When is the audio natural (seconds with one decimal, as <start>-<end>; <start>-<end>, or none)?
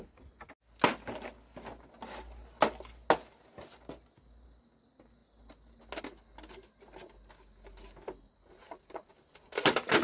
0.0-10.0